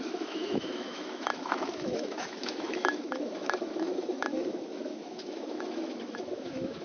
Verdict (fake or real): fake